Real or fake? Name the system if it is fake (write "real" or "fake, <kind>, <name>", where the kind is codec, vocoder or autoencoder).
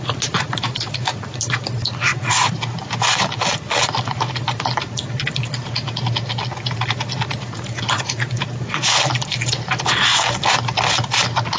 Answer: real